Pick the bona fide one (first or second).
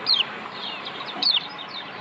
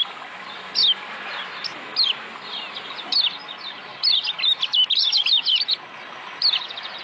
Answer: second